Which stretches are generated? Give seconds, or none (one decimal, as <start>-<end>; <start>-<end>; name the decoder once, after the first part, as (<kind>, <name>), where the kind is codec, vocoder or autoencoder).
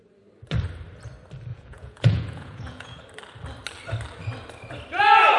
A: 1.5-3.0 (vocoder, Vocos)